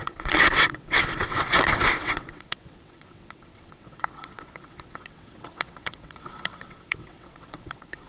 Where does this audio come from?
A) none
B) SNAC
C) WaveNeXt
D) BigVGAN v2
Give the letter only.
C